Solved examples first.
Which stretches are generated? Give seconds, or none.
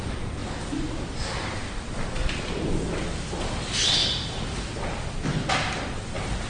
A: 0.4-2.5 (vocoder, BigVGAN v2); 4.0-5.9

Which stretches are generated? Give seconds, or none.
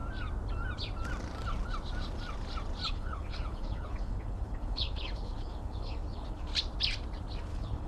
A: 2.9-6.5 (codec, HILCodec); 7.4-7.9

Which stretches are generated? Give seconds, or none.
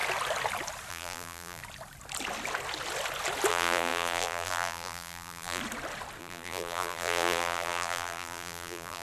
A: 0.9-1.6 (vocoder, BigVGAN v2); 3.5-5.6; 6.2-9.0